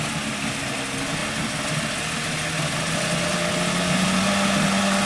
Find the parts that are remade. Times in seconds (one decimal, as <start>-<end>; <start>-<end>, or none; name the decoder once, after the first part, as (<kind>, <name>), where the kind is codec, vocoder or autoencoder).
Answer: none